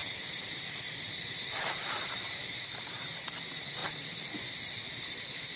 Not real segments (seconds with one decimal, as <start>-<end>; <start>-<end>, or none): 0.0-1.0; 3.8-5.6